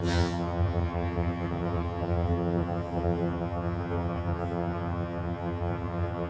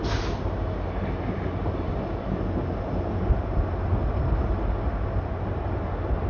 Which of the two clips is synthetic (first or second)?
first